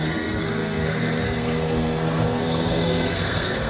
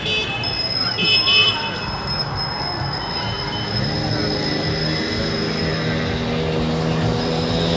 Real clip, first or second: second